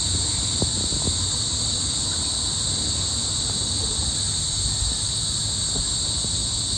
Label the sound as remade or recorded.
recorded